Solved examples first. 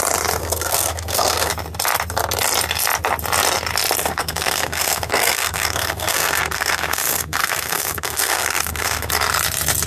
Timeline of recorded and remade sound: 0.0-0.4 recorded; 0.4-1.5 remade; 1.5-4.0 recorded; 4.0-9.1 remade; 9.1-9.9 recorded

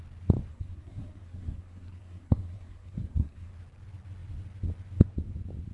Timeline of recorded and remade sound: 0.0-0.5 recorded; 0.5-3.5 remade; 3.5-5.7 recorded

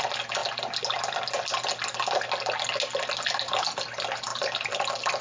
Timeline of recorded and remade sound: 0.0-0.4 remade; 0.4-3.5 recorded; 3.5-5.2 remade

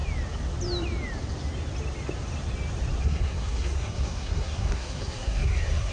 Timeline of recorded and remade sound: 0.0-3.0 recorded; 3.0-5.9 remade

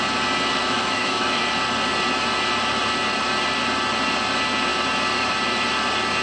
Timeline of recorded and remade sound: 0.0-0.6 recorded; 0.6-1.4 remade; 1.4-6.2 recorded

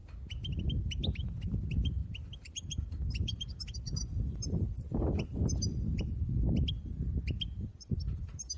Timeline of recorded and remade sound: 0.0-0.6 recorded; 0.6-8.6 remade

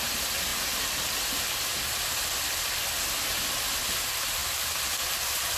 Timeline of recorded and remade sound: 0.0-5.6 recorded

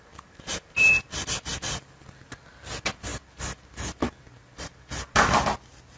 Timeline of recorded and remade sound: 0.0-6.0 recorded